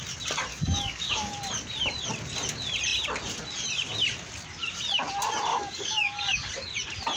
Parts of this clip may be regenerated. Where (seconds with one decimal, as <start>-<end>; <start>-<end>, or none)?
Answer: 0.5-1.3; 5.5-6.5